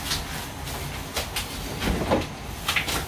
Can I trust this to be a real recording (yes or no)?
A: yes